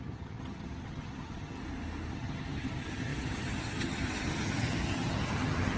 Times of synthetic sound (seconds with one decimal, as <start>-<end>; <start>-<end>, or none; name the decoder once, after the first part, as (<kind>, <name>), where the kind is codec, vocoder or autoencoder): 0.0-1.6 (vocoder, HiFi-GAN); 2.1-5.8